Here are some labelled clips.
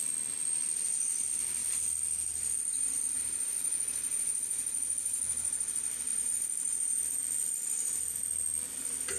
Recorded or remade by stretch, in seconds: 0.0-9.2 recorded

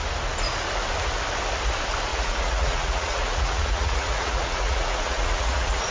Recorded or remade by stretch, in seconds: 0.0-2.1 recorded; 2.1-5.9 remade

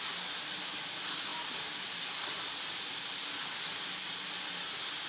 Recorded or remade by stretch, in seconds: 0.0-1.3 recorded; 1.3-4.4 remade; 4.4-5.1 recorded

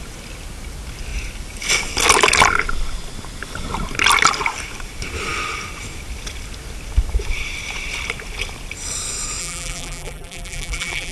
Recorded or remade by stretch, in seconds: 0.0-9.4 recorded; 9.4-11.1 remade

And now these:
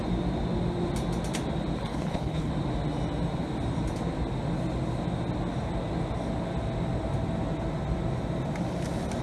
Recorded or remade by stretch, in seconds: 0.0-1.9 recorded; 1.9-2.5 remade; 2.5-9.2 recorded